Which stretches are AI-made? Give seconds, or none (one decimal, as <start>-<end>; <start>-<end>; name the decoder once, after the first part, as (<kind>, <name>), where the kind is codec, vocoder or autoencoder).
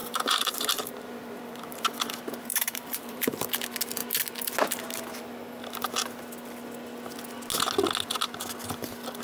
0.0-1.9 (vocoder, BigVGAN v2); 2.5-3.5